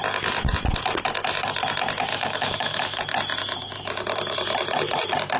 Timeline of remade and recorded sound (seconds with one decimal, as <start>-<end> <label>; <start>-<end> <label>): 0.0-2.1 recorded; 2.1-3.0 remade; 3.0-5.4 recorded

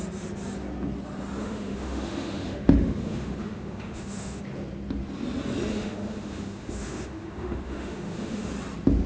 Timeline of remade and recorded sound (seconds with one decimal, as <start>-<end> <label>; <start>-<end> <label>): 0.0-1.4 recorded; 1.4-4.4 remade; 4.4-5.7 recorded; 5.7-8.5 remade; 8.5-9.1 recorded

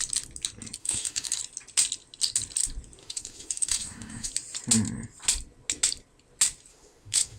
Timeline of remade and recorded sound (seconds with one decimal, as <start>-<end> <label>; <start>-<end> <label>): 0.0-0.8 recorded; 0.8-1.4 remade; 1.4-3.0 recorded; 3.0-4.3 remade; 4.3-6.7 recorded; 6.7-7.4 remade